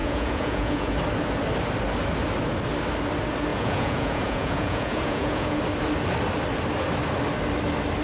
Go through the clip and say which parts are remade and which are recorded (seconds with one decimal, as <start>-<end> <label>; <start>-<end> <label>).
0.0-0.9 remade; 0.9-3.5 recorded; 3.5-5.6 remade; 5.6-8.0 recorded

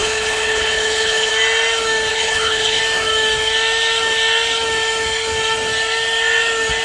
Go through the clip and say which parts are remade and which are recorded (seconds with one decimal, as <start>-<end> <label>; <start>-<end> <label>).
0.0-1.3 remade; 1.3-2.1 recorded; 2.1-2.8 remade; 2.8-6.8 recorded

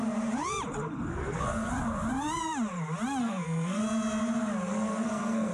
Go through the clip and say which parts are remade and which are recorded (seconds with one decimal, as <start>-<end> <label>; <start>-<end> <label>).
0.0-1.1 recorded; 1.1-1.7 remade; 1.7-3.2 recorded; 3.2-3.8 remade; 3.8-4.7 recorded; 4.7-5.5 remade

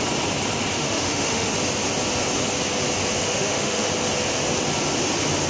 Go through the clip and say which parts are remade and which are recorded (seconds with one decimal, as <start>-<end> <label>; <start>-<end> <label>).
0.0-0.7 recorded; 0.7-1.5 remade; 1.5-3.2 recorded; 3.2-3.9 remade; 3.9-5.5 recorded

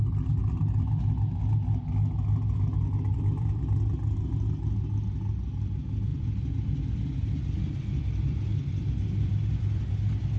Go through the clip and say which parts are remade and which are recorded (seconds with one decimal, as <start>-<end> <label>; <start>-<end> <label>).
0.0-0.4 recorded; 0.4-1.0 remade; 1.0-3.1 recorded; 3.1-4.3 remade; 4.3-6.1 recorded; 6.1-9.8 remade; 9.8-10.4 recorded

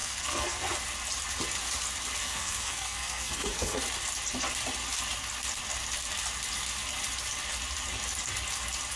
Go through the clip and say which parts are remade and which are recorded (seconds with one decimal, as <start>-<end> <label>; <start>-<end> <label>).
0.0-0.7 remade; 0.7-2.2 recorded; 2.2-3.8 remade; 3.8-9.0 recorded

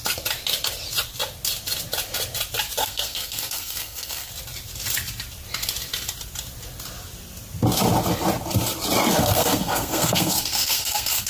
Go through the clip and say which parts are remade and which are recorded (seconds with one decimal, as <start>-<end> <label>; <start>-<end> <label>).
0.0-2.8 recorded; 2.8-4.3 remade; 4.3-9.2 recorded; 9.2-11.3 remade